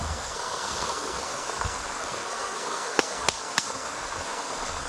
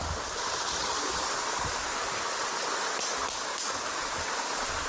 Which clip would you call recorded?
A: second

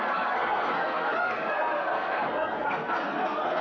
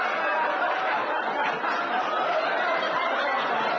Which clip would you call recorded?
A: second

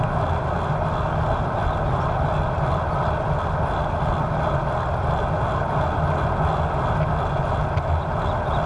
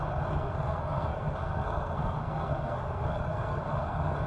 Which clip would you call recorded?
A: first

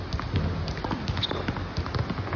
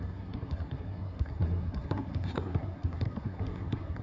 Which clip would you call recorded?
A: first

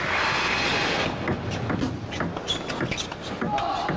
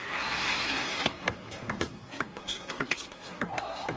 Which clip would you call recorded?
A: first